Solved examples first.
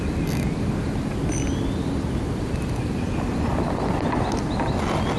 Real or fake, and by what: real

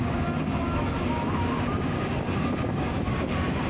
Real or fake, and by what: fake, codec, DAC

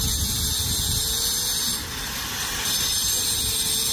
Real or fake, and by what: real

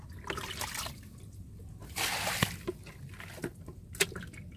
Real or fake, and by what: real